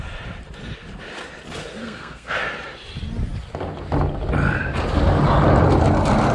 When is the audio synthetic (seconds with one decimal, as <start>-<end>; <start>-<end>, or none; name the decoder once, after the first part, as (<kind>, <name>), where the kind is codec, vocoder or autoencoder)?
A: 1.8-2.4 (codec, SNAC)